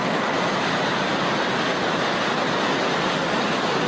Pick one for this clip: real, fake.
real